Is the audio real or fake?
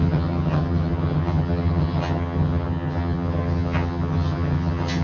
fake